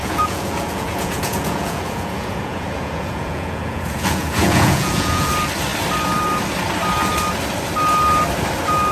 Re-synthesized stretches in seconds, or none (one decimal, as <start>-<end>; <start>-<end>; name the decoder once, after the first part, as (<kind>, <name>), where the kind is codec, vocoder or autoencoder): 0.0-5.3 (vocoder, Vocos)